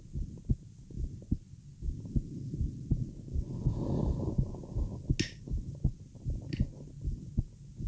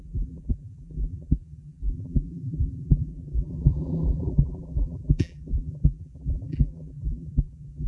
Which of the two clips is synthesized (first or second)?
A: second